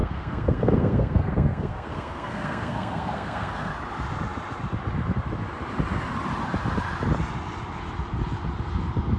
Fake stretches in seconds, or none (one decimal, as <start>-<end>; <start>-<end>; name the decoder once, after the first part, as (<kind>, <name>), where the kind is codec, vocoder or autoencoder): 0.0-3.7 (codec, SNAC)